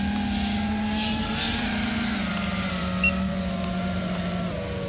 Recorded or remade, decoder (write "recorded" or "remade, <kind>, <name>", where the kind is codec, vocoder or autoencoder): recorded